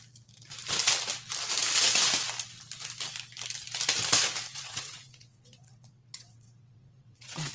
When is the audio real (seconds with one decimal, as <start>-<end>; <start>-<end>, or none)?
0.0-4.5